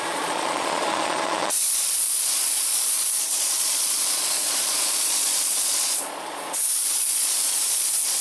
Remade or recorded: remade